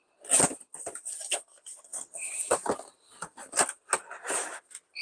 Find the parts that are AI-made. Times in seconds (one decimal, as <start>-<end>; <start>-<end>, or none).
none